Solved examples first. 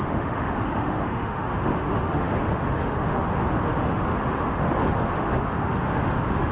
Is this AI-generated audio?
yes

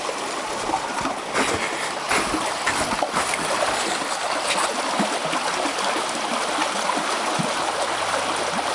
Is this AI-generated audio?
no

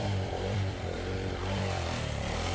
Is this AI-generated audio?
yes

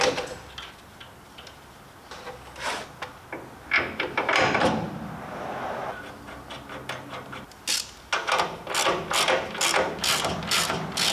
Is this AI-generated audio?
no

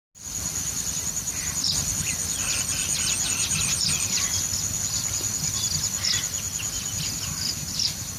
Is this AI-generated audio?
no